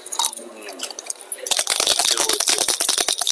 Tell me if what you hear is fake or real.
real